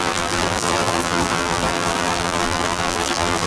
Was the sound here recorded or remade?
remade